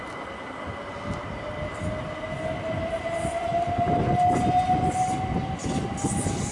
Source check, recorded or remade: recorded